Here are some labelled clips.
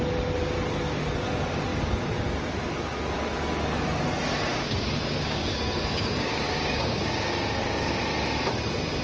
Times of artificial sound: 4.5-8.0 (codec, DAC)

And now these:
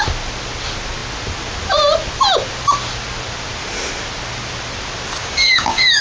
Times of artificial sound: 5.2-6.0 (codec, DAC)

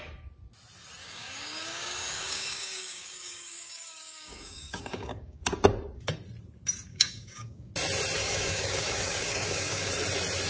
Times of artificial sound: 1.0-5.4 (codec, DAC); 6.9-7.7; 8.2-9.9

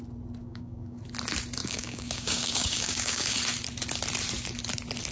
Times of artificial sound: 0.4-1.0 (codec, DAC); 1.6-3.4

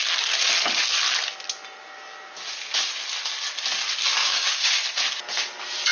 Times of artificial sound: 4.2-4.8 (codec, DAC)

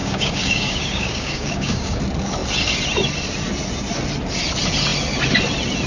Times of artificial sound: 0.0-2.0 (codec, DAC)

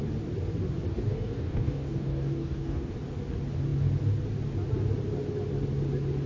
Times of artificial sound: 0.9-2.9 (codec, DAC)